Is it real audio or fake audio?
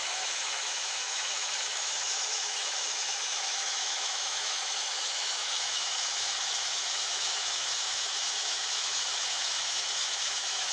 fake